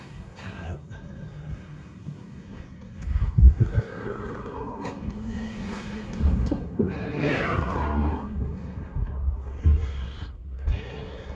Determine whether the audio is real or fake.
fake